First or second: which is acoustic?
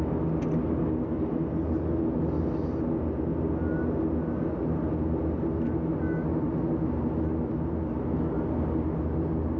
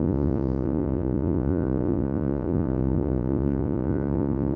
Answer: first